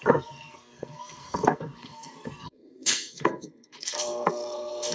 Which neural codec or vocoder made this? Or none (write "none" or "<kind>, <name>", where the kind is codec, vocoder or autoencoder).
codec, SNAC